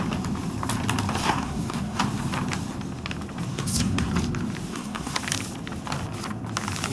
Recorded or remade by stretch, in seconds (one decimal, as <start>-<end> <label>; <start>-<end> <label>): 0.0-1.2 recorded; 1.2-2.0 remade; 2.0-3.5 recorded; 3.5-4.1 remade; 4.1-4.7 recorded; 4.7-5.2 remade; 5.2-6.9 recorded